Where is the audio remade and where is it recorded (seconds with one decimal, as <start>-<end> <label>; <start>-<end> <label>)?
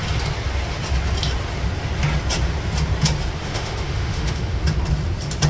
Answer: 0.0-3.4 recorded; 3.4-4.6 remade; 4.6-5.5 recorded